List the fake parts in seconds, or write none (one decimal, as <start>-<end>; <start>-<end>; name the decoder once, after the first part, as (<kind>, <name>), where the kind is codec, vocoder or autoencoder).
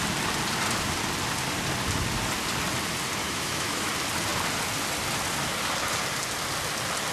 3.2-3.9 (autoencoder, DAC-VAE)